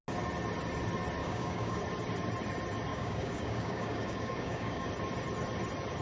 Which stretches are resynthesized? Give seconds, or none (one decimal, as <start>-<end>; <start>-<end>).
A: 1.2-1.8; 2.9-4.9